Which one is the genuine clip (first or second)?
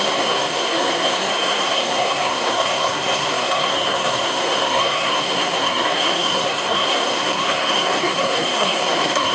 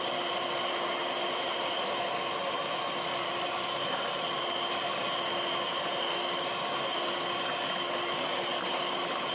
second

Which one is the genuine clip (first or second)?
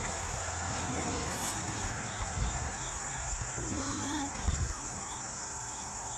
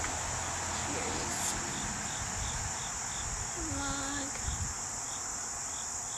second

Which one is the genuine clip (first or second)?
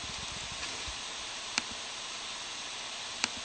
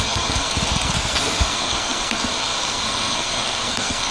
first